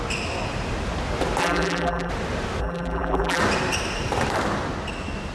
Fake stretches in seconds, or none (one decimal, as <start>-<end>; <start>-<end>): 1.4-2.1; 2.6-3.4